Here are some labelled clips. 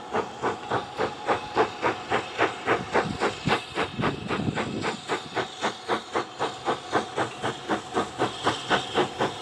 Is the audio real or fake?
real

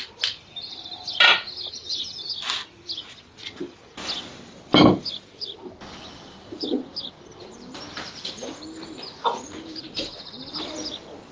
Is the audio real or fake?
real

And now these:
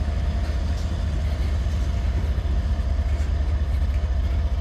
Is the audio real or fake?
real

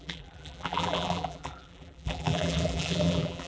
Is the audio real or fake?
fake